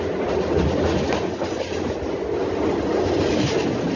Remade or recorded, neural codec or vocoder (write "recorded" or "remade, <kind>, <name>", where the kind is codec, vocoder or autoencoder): recorded